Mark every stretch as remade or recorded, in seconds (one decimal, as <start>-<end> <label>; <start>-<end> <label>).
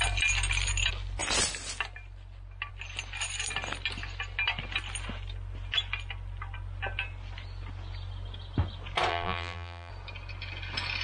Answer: 0.0-9.1 recorded; 9.1-9.9 remade; 9.9-11.0 recorded